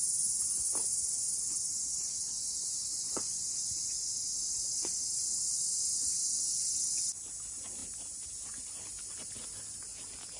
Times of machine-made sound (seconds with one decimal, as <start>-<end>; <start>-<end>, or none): 0.9-6.0

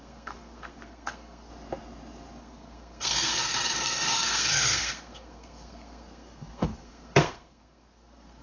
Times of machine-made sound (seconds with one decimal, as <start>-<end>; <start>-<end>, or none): 0.0-1.5; 2.4-8.4

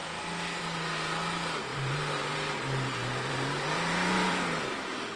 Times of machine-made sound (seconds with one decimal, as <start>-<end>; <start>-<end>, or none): 1.7-4.6

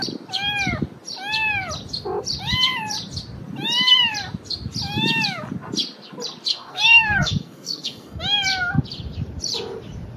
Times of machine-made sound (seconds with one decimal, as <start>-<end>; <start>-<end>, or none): 6.5-8.2

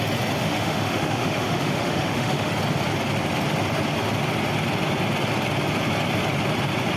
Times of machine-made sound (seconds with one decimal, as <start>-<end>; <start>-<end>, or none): 0.4-2.5

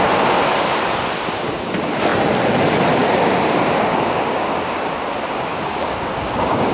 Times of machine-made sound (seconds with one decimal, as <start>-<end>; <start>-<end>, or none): 3.9-4.7; 5.5-6.7

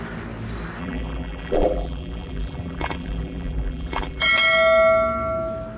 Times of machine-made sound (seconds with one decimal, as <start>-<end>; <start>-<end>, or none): 0.8-4.3

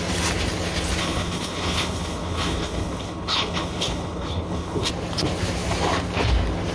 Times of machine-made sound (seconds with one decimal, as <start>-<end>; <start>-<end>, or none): 1.0-4.9